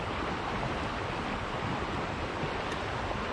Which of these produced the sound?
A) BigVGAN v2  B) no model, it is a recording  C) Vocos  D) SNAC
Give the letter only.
B